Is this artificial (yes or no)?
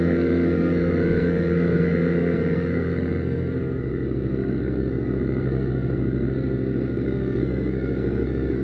yes